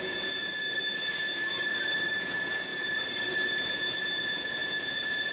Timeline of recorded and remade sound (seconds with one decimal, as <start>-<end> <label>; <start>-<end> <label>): 0.0-0.5 remade; 0.5-2.2 recorded; 2.2-2.7 remade; 2.7-3.7 recorded; 3.7-5.3 remade